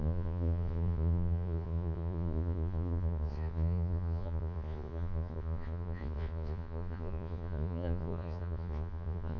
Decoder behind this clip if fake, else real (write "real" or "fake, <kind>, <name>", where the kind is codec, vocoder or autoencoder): fake, vocoder, Vocos